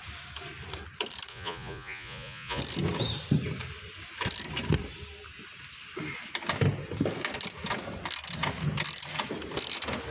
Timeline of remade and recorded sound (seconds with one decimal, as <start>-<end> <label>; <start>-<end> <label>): 0.0-1.3 recorded; 1.3-2.6 remade; 2.6-10.1 recorded